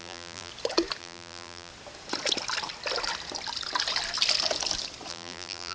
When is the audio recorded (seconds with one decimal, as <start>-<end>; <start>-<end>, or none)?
0.5-1.0; 1.7-5.1